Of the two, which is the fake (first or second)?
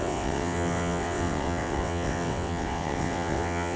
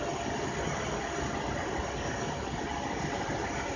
first